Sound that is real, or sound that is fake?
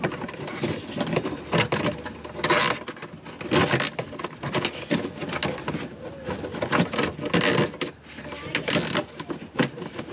real